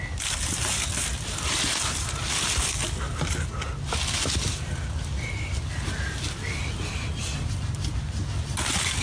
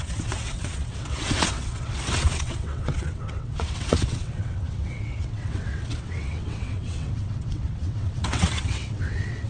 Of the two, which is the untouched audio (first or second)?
first